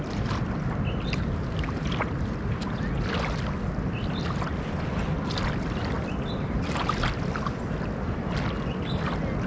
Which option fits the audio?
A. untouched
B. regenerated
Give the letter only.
A